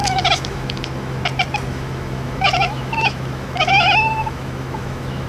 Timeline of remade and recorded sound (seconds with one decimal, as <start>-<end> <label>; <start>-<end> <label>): 0.0-1.2 remade; 1.2-1.7 recorded; 1.7-5.3 remade